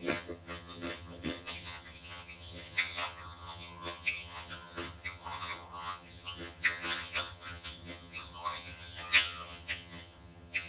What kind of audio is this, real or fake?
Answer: fake